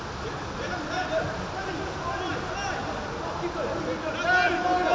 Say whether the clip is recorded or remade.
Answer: recorded